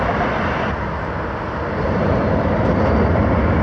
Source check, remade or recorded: recorded